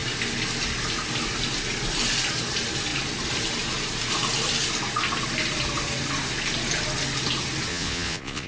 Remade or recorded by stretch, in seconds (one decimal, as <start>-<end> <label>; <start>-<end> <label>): 0.0-7.7 recorded; 7.7-8.5 remade